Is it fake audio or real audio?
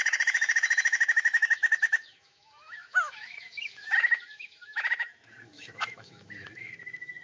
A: fake